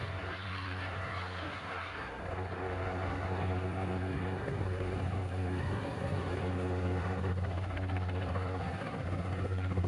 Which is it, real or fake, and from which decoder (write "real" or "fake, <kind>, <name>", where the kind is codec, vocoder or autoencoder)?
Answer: fake, codec, SNAC